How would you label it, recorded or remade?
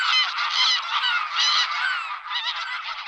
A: recorded